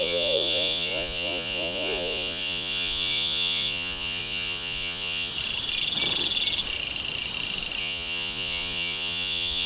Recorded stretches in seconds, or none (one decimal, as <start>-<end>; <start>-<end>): 5.3-7.8